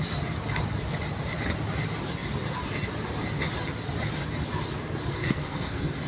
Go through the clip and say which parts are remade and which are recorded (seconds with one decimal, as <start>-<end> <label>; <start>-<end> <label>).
0.0-5.1 recorded; 5.1-6.1 remade